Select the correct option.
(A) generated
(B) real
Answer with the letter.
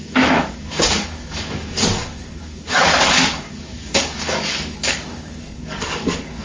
A